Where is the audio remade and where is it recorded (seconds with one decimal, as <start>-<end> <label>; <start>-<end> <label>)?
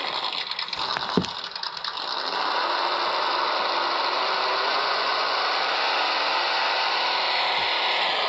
0.0-4.7 recorded; 4.7-5.4 remade; 5.4-8.3 recorded